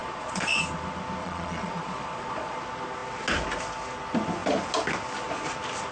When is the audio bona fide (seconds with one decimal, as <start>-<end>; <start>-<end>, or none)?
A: 0.6-1.2; 2.6-5.9